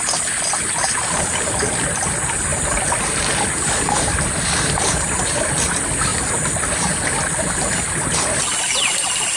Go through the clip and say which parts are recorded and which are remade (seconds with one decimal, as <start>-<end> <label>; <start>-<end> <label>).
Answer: 0.0-9.4 recorded